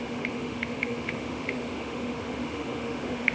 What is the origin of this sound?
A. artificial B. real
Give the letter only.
A